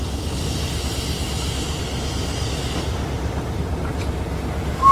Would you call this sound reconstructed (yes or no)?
no